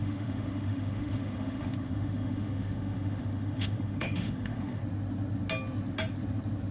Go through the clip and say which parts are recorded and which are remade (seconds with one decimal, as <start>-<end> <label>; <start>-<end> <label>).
0.0-4.8 remade; 4.8-6.7 recorded